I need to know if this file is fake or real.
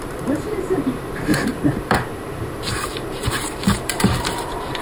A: fake